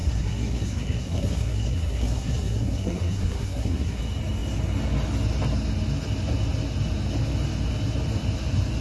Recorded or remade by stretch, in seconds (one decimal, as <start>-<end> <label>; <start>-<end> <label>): 0.0-4.0 remade; 4.0-8.8 recorded